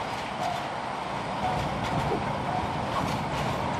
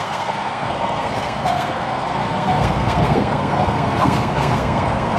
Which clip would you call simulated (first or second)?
second